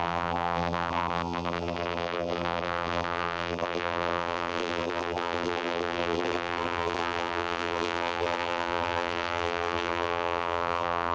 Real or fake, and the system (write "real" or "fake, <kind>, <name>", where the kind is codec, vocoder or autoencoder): fake, vocoder, BigVGAN v2